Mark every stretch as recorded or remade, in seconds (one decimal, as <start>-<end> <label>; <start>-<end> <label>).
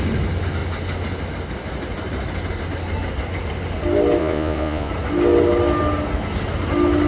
0.0-4.2 recorded; 4.2-4.9 remade; 4.9-7.1 recorded